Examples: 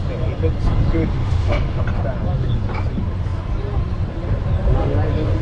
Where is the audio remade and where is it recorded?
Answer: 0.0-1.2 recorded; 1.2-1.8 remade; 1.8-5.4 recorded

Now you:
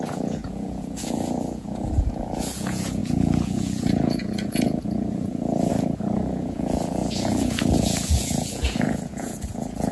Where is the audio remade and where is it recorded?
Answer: 0.0-9.9 remade

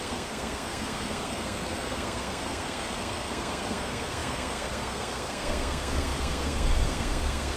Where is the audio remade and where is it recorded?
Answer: 0.0-7.6 remade

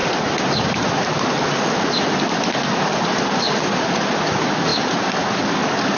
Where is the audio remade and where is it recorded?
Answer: 0.0-6.0 recorded

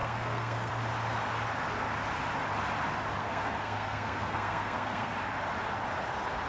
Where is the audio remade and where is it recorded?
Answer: 0.0-0.7 remade; 0.7-3.2 recorded; 3.2-5.1 remade; 5.1-6.5 recorded

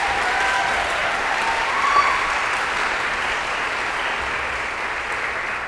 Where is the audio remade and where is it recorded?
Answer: 0.0-1.0 recorded; 1.0-4.2 remade; 4.2-5.7 recorded

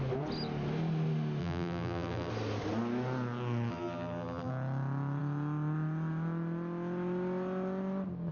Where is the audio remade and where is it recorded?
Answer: 0.0-1.4 recorded; 1.4-2.3 remade; 2.3-3.7 recorded; 3.7-4.5 remade; 4.5-8.3 recorded

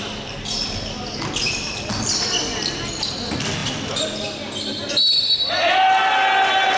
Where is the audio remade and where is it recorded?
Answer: 0.0-6.8 recorded